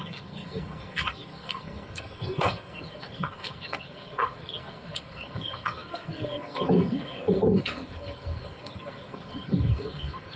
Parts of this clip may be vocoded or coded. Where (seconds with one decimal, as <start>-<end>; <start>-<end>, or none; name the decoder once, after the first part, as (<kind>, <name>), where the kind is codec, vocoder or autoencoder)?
0.0-10.4 (codec, SNAC)